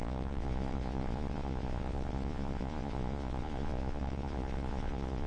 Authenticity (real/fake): fake